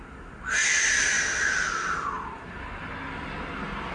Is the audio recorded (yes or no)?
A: yes